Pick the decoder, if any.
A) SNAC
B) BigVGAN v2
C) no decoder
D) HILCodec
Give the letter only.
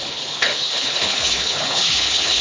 D